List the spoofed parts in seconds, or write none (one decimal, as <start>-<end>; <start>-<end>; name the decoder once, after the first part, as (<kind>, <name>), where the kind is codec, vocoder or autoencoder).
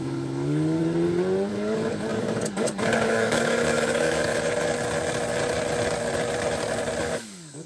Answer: 0.0-0.8 (codec, DAC); 1.5-4.3; 7.0-7.7